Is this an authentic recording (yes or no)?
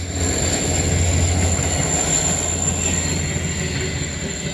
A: yes